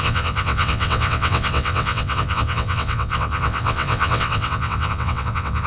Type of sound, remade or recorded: remade